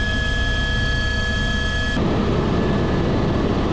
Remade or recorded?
recorded